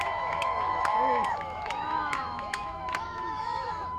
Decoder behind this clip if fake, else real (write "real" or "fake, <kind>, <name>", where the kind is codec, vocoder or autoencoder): fake, autoencoder, DAC-VAE